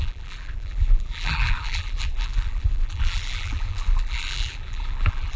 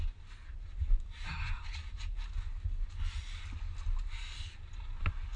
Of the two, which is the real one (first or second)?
second